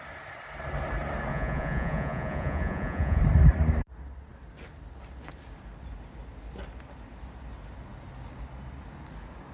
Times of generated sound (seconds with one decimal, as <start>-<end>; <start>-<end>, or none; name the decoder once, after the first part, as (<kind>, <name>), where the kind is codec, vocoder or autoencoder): 1.3-3.2 (vocoder, Vocos)